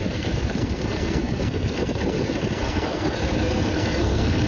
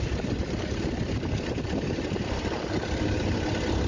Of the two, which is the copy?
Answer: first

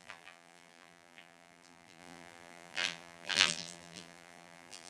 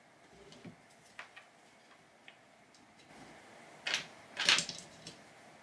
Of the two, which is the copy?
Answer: first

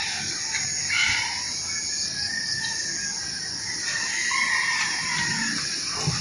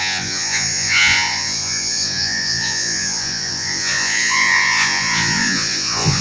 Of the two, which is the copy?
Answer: second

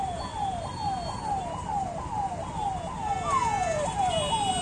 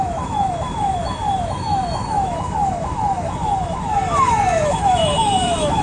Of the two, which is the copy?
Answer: second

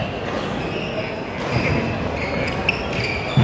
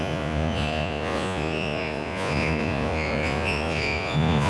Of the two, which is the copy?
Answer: second